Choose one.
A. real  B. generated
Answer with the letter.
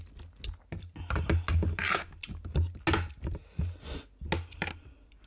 A